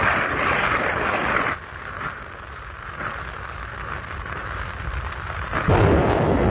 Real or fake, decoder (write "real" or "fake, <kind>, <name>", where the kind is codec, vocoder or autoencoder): real